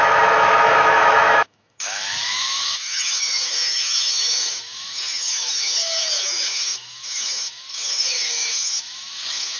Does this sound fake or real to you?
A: fake